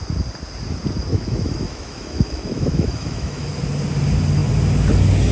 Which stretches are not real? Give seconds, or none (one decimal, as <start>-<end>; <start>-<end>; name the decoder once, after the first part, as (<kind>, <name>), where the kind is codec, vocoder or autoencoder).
1.1-3.5 (autoencoder, DAC-VAE)